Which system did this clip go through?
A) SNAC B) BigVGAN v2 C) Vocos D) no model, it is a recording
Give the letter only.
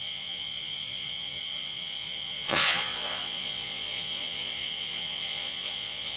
C